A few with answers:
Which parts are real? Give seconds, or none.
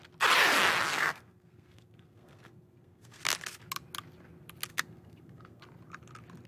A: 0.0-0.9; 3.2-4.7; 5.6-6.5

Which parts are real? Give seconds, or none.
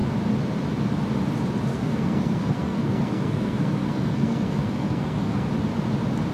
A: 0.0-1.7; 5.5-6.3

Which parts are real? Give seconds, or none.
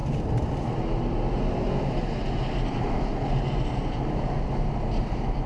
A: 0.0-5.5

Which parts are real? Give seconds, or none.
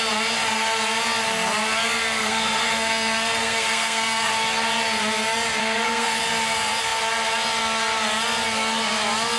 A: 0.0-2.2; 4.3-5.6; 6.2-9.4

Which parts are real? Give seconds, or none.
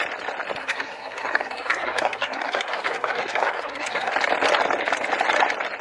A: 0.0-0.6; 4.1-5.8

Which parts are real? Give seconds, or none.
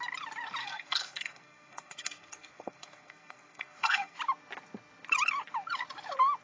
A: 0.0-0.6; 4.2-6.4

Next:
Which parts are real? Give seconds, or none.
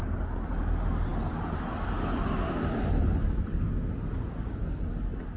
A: 0.0-5.4